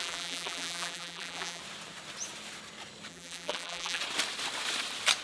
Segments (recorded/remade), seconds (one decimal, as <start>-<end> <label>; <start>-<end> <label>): 0.0-1.6 remade; 1.6-3.1 recorded; 3.1-4.0 remade; 4.0-5.2 recorded